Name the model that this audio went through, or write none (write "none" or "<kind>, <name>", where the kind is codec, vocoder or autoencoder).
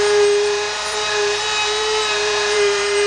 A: vocoder, BigVGAN v2